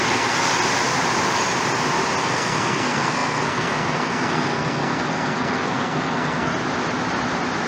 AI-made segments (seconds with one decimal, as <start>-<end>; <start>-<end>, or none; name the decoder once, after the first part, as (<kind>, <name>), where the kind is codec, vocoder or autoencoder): 0.0-0.5 (codec, SNAC); 2.2-6.5